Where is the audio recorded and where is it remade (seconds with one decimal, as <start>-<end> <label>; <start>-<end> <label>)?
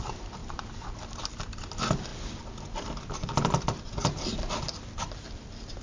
0.0-5.8 recorded